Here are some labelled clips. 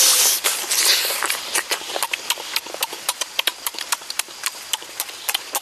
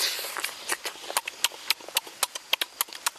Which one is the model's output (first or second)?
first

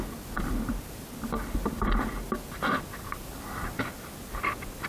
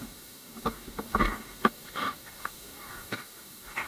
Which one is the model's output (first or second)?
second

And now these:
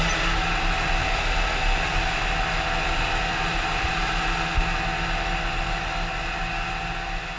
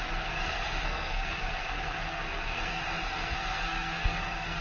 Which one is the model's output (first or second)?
second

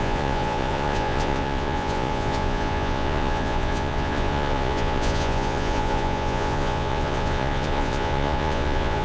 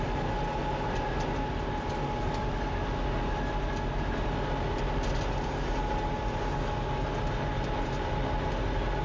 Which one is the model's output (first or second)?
first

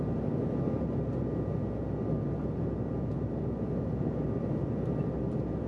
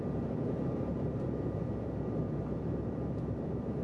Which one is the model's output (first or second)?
second